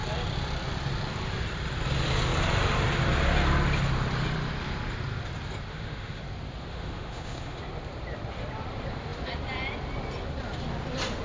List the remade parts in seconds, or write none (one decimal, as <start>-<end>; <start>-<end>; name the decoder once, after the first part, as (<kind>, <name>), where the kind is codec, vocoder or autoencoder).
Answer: 5.7-6.2 (autoencoder, DAC-VAE); 6.7-7.6

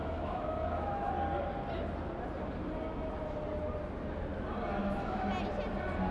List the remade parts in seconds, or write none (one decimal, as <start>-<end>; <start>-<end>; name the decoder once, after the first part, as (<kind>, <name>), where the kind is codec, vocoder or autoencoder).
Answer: 0.0-1.1 (autoencoder, DAC-VAE); 4.8-5.3

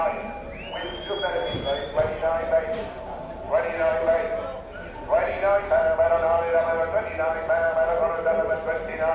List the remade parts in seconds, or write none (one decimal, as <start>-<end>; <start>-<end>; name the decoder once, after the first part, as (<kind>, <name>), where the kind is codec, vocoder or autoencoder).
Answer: none

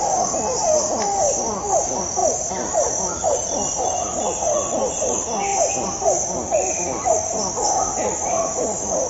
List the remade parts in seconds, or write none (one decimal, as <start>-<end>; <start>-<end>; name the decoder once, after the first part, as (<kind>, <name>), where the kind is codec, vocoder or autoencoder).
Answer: none

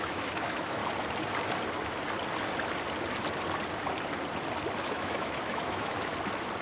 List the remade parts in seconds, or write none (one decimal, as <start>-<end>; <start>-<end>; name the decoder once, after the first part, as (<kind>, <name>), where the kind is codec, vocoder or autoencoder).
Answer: 0.0-0.8 (autoencoder, DAC-VAE); 4.8-6.1

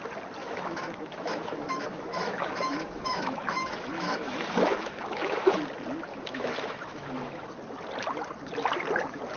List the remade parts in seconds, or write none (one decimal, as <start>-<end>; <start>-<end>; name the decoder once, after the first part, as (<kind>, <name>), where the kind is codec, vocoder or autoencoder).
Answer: 0.4-5.6 (autoencoder, DAC-VAE); 6.1-7.5

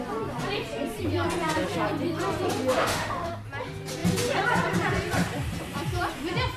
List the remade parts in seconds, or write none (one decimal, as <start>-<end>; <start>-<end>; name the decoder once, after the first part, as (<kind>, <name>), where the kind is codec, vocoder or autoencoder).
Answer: 2.7-3.3 (autoencoder, DAC-VAE)